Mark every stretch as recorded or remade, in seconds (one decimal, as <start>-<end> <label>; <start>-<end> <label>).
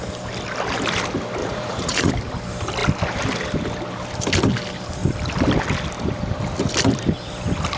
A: 0.0-1.4 recorded; 1.4-2.1 remade; 2.1-7.8 recorded